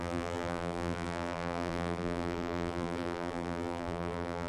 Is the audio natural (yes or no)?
no